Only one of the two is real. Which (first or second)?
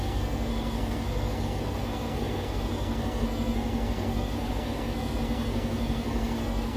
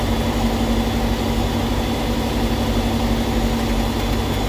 second